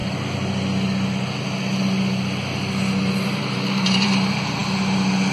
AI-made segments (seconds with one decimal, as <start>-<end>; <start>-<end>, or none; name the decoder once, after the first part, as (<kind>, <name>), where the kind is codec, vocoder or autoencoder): 3.2-4.6 (vocoder, BigVGAN v2)